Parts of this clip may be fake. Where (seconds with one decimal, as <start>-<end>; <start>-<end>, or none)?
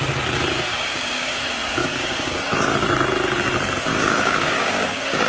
0.7-1.4; 1.8-2.4; 3.9-5.3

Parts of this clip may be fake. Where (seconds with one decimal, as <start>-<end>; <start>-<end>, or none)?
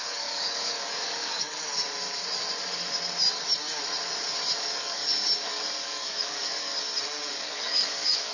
0.0-1.5; 4.6-5.0; 5.8-6.7; 7.3-8.3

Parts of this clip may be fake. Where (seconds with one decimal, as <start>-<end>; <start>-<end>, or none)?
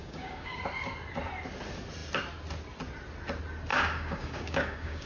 0.0-0.6; 3.7-5.1